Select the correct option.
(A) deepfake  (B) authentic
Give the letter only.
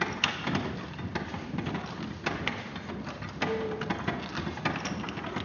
B